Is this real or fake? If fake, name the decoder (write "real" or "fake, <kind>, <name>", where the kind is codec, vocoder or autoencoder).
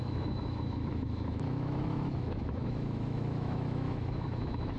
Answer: fake, autoencoder, DAC-VAE